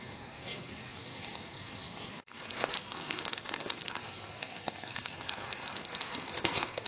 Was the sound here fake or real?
fake